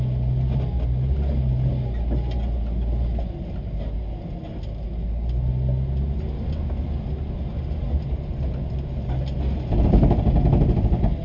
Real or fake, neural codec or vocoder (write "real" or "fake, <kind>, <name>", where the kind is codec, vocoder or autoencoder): real